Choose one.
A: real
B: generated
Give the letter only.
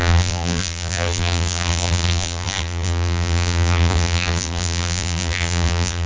B